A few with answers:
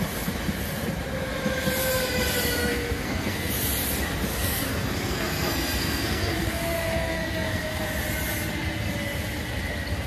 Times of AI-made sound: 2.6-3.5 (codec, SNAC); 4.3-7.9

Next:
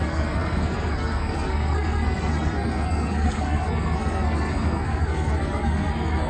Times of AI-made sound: 0.0-6.3 (codec, SNAC)

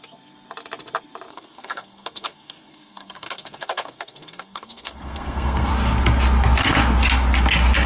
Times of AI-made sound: 1.3-5.7 (codec, SNAC)

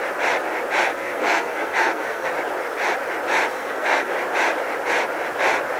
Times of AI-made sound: 0.9-2.3 (codec, SNAC); 3.5-4.1

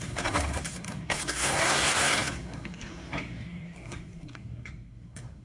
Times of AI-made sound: 0.0-5.4 (codec, SNAC)